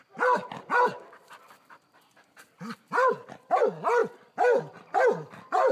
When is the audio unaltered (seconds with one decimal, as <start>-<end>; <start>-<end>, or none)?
0.0-5.7